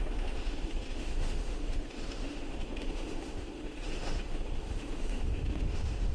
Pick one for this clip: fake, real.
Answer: fake